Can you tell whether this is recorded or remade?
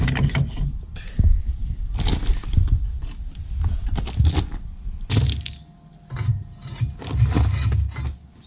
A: recorded